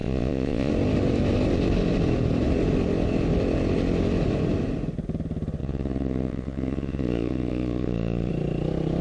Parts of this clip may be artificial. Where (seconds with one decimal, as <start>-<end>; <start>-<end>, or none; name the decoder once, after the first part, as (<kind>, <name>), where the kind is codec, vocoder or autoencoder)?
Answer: 0.0-0.7 (vocoder, Vocos); 5.6-8.3